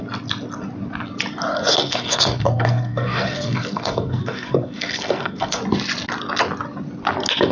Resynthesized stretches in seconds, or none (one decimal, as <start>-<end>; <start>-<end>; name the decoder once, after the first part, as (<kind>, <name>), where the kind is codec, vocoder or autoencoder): 1.7-5.6 (codec, SNAC)